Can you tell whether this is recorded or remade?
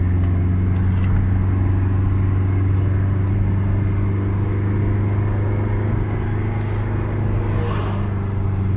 recorded